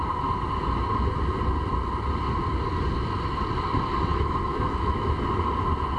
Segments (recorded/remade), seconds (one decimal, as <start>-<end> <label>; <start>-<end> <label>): 0.0-4.1 recorded; 4.1-5.1 remade; 5.1-6.0 recorded